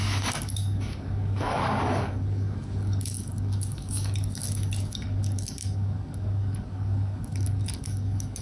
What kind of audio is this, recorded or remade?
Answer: remade